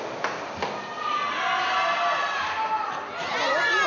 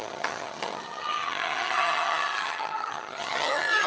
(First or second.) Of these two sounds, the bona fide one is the first